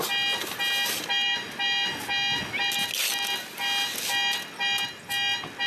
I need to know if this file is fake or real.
real